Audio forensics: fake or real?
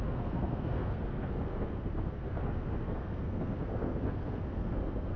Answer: fake